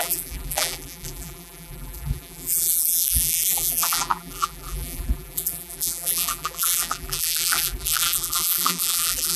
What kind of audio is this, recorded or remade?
remade